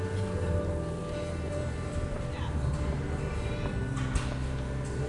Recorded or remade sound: remade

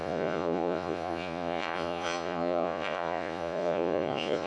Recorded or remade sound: remade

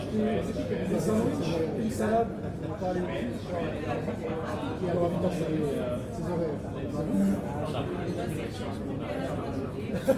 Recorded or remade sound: recorded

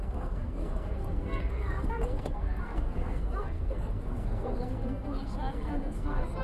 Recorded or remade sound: remade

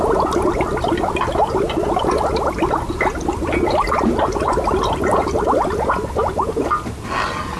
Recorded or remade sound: recorded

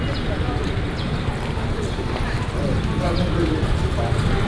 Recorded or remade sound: recorded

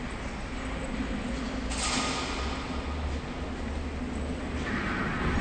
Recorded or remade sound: recorded